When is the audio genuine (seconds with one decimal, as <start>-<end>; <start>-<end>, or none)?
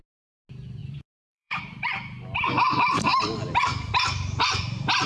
0.0-0.8; 1.6-5.1